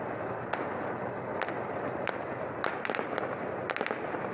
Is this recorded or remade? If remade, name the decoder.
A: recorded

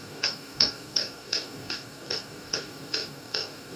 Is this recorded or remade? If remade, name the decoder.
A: remade, codec, DAC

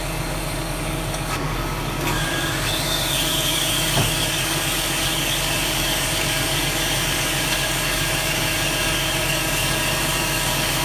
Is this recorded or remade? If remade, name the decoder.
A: remade, codec, DAC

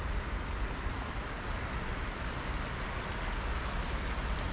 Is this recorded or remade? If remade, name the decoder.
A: recorded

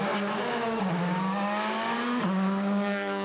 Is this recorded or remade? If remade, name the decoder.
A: remade, codec, DAC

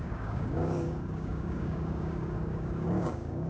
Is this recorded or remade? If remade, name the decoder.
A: remade, codec, DAC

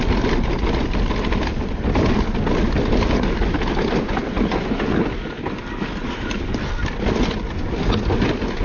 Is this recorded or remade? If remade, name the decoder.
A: recorded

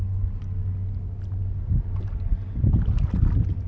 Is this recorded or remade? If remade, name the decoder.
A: recorded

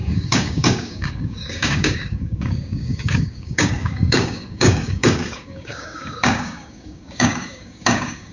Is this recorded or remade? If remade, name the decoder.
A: remade, codec, DAC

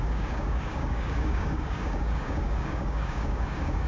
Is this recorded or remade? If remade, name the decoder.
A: remade, codec, DAC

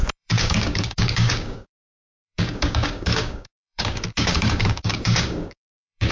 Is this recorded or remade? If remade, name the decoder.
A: remade, codec, DAC